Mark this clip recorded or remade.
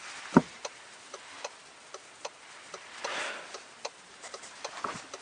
remade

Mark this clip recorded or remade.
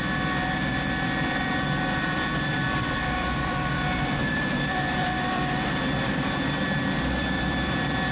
remade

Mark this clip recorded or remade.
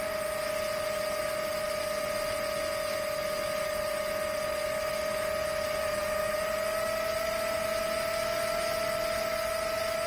recorded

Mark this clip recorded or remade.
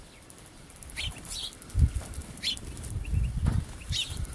remade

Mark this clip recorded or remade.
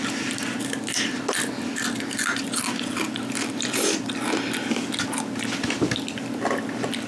recorded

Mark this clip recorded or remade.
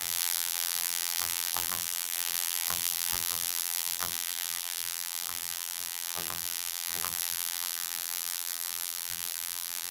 remade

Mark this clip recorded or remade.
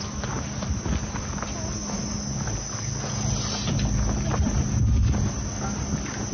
recorded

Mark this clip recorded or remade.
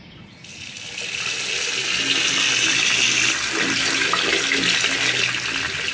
recorded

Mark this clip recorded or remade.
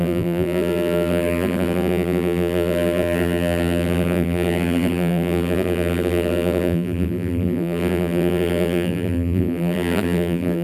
remade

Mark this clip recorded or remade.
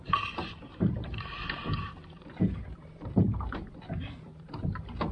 remade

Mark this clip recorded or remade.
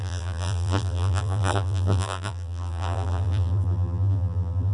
remade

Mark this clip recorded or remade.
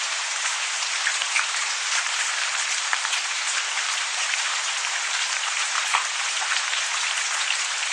remade